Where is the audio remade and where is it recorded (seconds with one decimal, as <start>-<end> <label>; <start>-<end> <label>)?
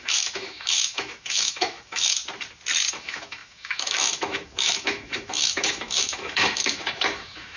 0.0-2.2 remade; 2.2-2.9 recorded; 2.9-7.6 remade